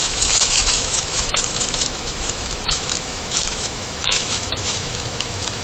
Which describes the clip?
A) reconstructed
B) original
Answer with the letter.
A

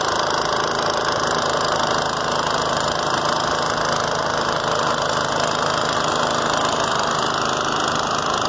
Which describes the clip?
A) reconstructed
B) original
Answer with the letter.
B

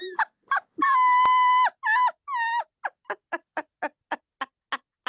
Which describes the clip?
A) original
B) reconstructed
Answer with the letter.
A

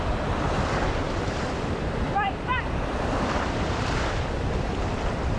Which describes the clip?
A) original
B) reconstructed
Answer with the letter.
B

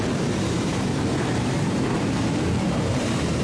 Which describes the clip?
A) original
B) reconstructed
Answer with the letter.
B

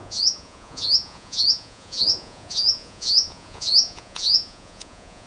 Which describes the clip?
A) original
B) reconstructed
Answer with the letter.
B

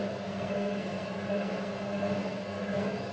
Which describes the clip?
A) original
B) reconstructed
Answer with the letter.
B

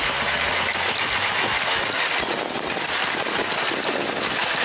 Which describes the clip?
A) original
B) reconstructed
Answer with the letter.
A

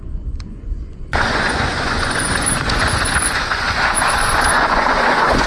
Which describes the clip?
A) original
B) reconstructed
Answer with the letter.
B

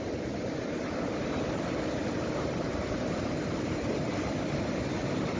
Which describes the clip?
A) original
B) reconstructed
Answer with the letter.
A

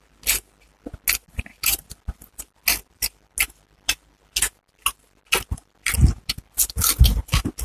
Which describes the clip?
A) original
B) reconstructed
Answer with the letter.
A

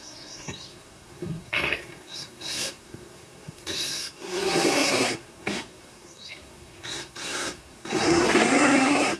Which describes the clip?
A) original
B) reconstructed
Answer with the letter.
B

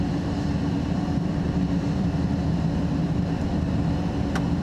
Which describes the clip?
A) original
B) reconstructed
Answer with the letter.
B